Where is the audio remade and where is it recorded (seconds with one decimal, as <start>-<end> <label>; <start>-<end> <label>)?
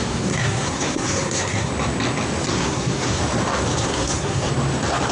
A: 0.0-1.7 remade; 1.7-2.5 recorded; 2.5-3.2 remade; 3.2-3.7 recorded; 3.7-4.5 remade; 4.5-5.1 recorded